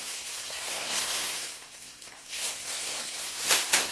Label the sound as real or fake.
fake